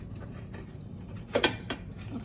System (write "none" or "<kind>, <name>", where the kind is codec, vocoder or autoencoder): vocoder, BigVGAN v2